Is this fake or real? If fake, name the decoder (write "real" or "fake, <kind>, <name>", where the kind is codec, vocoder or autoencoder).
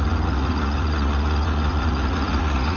fake, vocoder, Vocos